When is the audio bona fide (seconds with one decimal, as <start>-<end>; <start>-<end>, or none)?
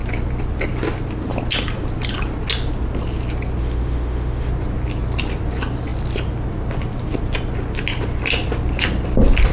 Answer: 0.0-3.6; 4.5-9.5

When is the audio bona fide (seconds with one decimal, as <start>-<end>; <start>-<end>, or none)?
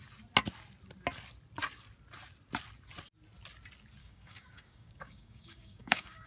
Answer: 0.0-4.0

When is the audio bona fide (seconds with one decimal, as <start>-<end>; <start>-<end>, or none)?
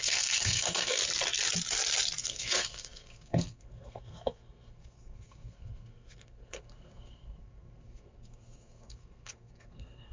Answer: 1.0-2.2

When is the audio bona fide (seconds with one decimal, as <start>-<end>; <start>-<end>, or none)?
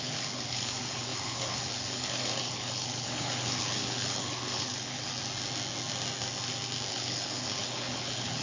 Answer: 5.1-6.9